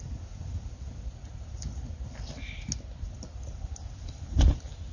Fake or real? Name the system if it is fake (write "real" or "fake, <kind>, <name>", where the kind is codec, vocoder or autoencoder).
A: real